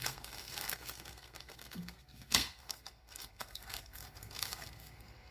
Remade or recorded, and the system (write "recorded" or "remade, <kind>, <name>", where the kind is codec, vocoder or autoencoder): remade, codec, SNAC